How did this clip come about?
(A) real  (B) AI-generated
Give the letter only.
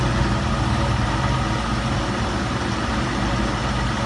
A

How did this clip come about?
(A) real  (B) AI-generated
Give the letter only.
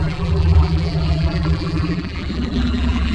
B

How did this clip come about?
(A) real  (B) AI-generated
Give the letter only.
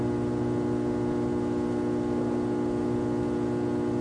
A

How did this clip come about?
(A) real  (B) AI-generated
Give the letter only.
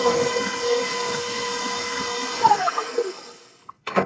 B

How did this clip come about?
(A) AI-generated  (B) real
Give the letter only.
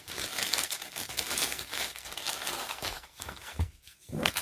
A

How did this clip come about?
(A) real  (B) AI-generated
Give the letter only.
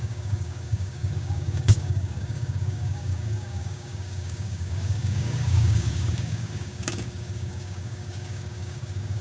B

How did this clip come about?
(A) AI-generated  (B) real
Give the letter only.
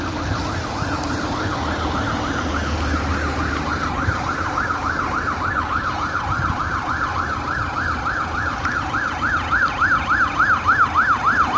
B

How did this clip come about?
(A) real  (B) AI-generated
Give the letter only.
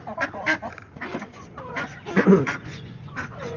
B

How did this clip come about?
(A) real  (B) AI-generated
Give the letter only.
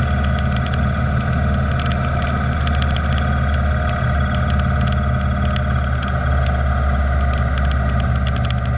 A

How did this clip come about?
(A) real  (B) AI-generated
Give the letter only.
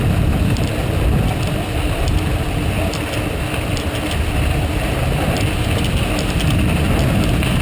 A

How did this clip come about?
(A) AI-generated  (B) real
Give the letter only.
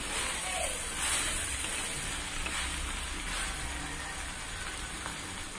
B